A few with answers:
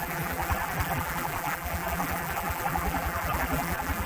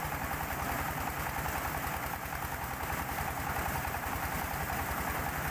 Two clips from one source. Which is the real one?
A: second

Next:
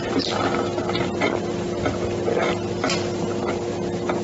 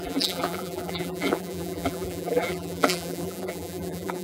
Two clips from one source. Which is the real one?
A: first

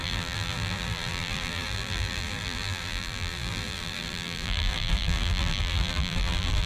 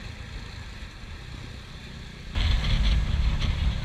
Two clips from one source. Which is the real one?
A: second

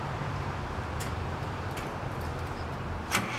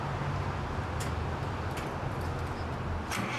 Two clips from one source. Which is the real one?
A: second